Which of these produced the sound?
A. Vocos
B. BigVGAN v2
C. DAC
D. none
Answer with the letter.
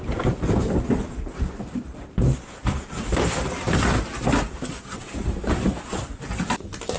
D